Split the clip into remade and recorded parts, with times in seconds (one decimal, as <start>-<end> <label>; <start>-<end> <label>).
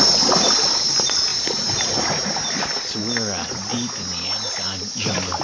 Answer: 0.0-1.3 remade; 1.3-3.0 recorded; 3.0-3.7 remade; 3.7-4.9 recorded; 4.9-5.4 remade